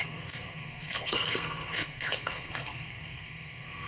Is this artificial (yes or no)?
yes